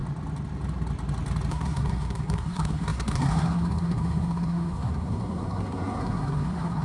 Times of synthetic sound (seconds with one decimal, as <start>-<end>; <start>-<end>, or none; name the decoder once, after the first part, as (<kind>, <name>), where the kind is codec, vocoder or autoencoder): 1.5-6.8 (codec, SNAC)